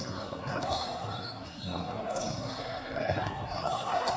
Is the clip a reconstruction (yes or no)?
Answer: yes